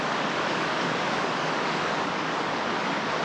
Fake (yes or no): yes